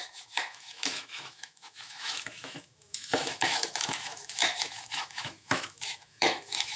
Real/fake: fake